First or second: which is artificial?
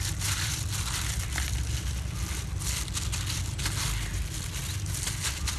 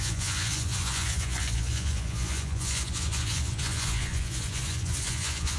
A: second